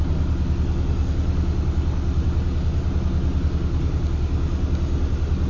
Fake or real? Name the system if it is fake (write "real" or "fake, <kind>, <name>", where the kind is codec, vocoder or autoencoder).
real